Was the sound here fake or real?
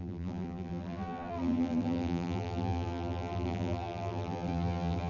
fake